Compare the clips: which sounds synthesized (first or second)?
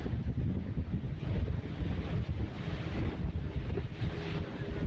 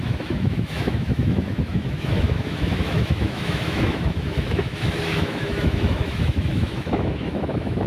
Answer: second